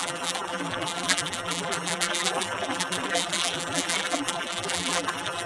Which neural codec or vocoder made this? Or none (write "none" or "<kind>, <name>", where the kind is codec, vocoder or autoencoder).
vocoder, BigVGAN v2